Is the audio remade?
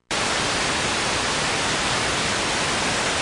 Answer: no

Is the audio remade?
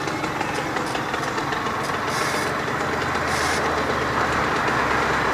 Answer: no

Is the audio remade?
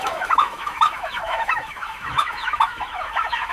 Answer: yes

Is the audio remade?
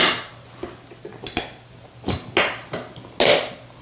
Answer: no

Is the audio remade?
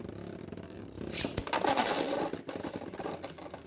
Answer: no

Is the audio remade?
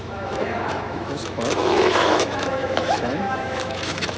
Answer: yes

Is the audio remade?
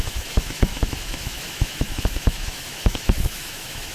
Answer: yes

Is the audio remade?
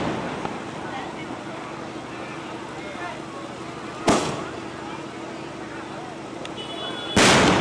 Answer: no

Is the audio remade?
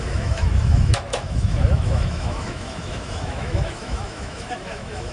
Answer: yes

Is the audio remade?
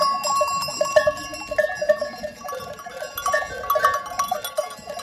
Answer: no